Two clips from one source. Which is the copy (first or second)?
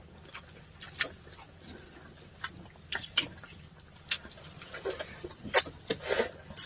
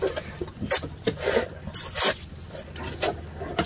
second